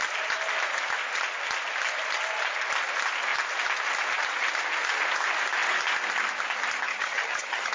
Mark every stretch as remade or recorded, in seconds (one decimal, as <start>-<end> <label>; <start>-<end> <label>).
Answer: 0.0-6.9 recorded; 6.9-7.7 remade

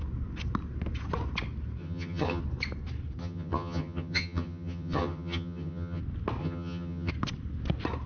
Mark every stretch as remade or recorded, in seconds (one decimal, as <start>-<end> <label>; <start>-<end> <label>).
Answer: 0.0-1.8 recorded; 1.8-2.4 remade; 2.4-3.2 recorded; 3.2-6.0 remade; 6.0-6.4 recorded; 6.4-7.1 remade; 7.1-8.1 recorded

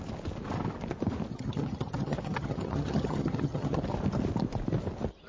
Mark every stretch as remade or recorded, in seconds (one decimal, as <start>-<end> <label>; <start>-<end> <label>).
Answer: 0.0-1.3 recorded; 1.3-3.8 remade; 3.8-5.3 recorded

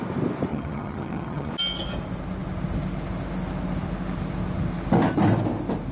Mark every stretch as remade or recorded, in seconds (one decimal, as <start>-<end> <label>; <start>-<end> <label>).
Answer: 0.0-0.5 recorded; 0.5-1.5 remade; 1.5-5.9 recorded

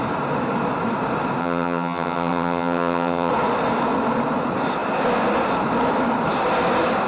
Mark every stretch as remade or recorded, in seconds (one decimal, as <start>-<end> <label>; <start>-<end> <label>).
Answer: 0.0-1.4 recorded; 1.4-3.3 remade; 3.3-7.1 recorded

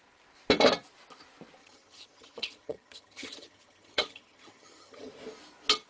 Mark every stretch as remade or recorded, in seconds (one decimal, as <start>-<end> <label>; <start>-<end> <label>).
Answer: 0.0-1.6 recorded; 1.6-5.1 remade; 5.1-5.9 recorded